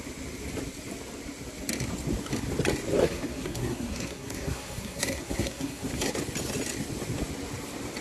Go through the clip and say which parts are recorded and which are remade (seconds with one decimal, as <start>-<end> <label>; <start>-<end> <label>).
0.0-3.0 recorded; 3.0-6.1 remade; 6.1-8.0 recorded